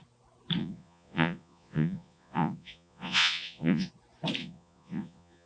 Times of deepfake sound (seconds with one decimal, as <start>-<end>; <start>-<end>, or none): 0.6-3.9; 4.4-5.5